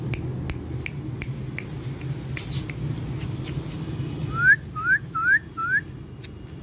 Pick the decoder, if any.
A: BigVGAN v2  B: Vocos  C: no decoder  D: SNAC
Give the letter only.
C